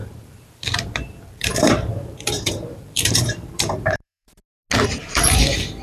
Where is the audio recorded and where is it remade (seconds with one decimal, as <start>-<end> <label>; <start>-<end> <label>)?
0.0-4.4 remade; 4.4-5.0 recorded; 5.0-5.8 remade